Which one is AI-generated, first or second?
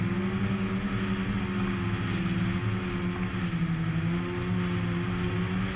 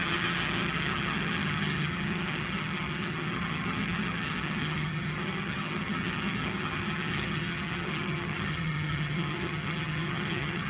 second